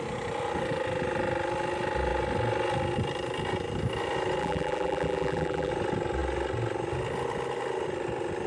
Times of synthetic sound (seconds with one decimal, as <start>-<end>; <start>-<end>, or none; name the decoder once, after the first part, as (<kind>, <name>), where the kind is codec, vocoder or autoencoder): 4.4-5.7 (vocoder, BigVGAN v2)